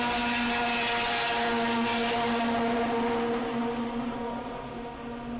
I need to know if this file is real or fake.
real